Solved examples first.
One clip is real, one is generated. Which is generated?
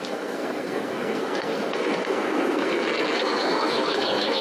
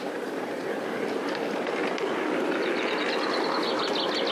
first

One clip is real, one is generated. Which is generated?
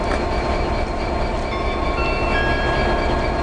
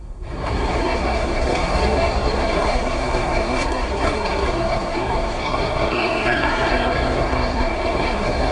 second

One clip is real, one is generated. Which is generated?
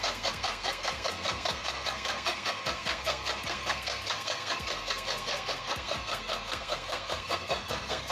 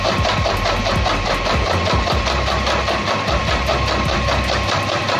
first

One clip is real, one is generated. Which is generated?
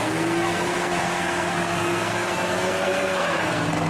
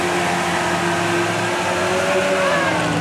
first